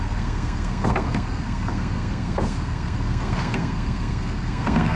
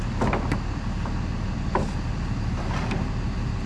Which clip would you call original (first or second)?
second